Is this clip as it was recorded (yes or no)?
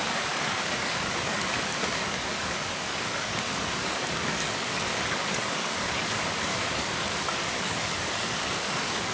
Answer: no